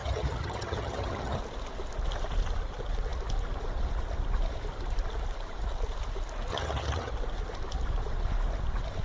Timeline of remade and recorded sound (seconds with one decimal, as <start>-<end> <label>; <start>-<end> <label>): 0.0-1.4 remade; 1.4-6.5 recorded; 6.5-7.1 remade; 7.1-9.0 recorded

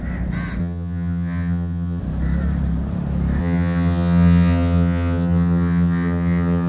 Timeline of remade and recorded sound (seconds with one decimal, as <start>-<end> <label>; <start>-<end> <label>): 0.0-0.6 recorded; 0.6-2.0 remade; 2.0-3.4 recorded; 3.4-6.7 remade